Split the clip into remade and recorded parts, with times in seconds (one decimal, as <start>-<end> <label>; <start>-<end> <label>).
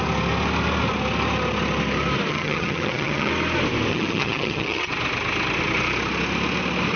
0.0-2.3 recorded; 2.3-3.3 remade; 3.3-3.9 recorded; 3.9-4.9 remade; 4.9-7.0 recorded